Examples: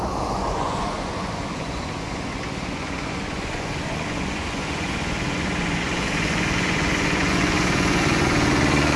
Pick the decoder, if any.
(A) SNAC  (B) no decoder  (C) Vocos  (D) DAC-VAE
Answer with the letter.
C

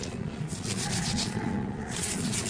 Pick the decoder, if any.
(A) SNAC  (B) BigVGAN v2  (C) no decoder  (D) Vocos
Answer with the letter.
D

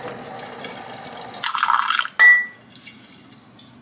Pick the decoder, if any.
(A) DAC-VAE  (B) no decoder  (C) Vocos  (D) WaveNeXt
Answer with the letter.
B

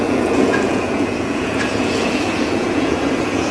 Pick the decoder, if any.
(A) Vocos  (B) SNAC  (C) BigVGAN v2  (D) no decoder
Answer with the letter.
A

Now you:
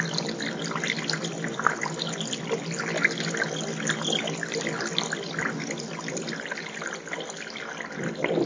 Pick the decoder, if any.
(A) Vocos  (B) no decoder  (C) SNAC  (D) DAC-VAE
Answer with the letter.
B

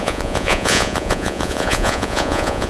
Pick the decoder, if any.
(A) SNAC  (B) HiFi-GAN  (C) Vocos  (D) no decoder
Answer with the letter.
C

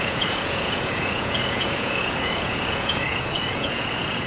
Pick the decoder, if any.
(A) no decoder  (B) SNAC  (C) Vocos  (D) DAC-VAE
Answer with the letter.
C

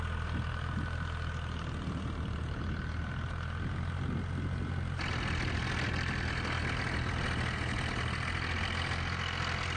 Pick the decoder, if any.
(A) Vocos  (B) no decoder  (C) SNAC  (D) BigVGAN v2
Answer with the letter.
B